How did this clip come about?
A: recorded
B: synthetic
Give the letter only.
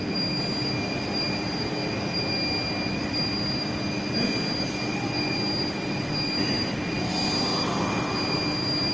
A